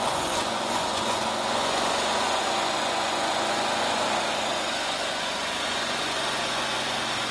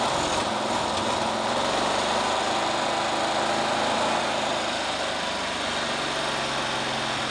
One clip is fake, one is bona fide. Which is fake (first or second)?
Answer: first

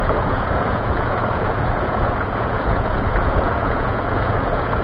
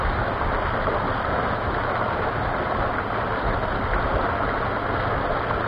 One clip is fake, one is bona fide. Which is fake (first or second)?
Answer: first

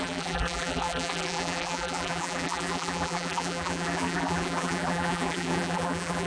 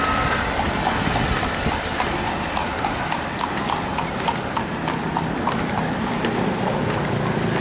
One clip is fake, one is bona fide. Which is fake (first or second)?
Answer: first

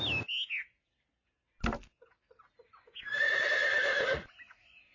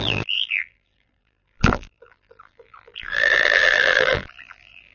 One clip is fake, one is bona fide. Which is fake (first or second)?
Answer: second